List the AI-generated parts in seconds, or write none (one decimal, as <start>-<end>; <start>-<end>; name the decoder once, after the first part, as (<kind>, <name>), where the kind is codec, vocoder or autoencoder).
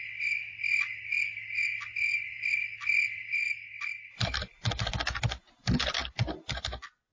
none